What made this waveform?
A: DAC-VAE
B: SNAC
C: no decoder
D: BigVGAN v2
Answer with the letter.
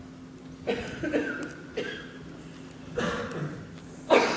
C